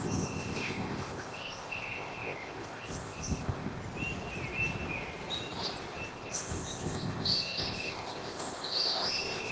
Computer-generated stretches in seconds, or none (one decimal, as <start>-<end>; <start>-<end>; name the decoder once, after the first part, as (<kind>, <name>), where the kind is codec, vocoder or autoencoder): 0.0-3.8 (codec, ZipCodec); 6.1-9.5